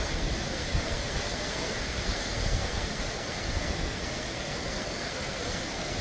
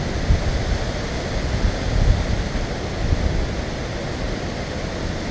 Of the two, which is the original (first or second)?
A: second